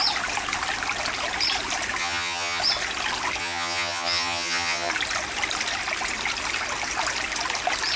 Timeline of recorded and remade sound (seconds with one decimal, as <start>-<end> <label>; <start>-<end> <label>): 0.0-2.0 recorded; 2.0-2.6 remade; 2.6-3.4 recorded; 3.4-4.9 remade; 4.9-8.0 recorded